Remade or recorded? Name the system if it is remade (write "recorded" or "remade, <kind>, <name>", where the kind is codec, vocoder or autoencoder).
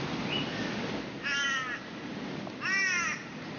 recorded